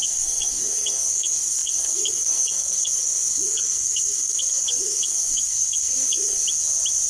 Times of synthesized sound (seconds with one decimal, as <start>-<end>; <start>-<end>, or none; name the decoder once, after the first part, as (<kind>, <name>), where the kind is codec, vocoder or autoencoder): 0.0-6.4 (codec, SNAC)